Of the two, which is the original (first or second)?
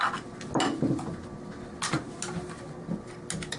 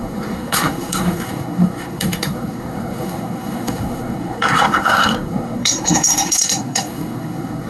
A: first